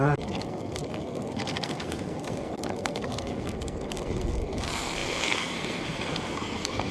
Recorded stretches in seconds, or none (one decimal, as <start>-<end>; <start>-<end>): none